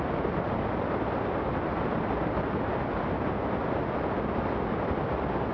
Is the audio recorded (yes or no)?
yes